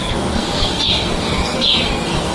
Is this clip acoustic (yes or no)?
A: no